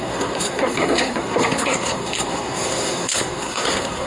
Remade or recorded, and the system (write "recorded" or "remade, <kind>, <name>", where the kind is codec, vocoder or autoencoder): remade, codec, SNAC